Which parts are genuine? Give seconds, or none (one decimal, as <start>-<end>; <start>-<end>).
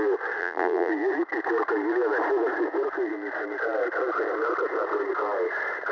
0.0-0.4; 0.9-5.9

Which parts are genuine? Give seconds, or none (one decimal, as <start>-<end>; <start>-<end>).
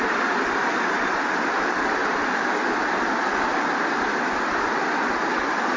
0.0-5.8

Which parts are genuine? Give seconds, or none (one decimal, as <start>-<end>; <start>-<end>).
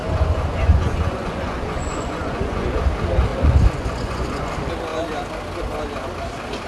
2.7-3.3; 4.5-6.7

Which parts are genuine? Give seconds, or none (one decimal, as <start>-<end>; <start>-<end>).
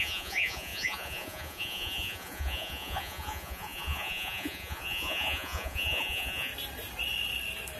6.5-7.8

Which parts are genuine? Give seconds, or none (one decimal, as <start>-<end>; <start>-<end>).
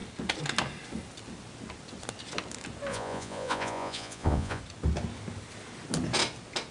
0.0-2.9; 4.6-6.7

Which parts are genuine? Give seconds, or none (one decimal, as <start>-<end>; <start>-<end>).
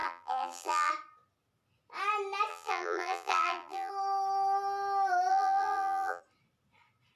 0.9-2.5; 3.9-5.3; 6.2-7.2